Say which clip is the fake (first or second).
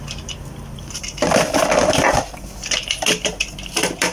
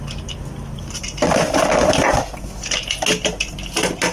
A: first